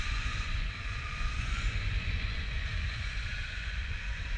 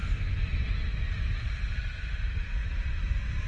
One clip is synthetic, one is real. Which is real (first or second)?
second